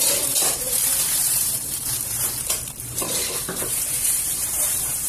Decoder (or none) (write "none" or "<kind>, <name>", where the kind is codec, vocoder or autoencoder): vocoder, BigVGAN v2